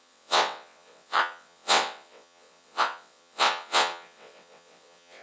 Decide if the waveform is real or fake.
fake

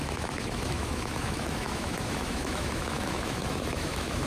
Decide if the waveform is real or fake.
fake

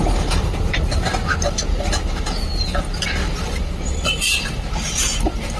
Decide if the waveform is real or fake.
real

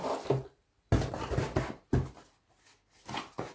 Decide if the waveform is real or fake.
real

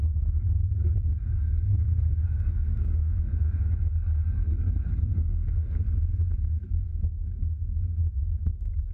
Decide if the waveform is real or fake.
fake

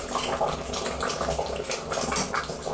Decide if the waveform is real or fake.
real